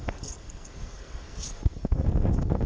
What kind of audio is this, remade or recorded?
remade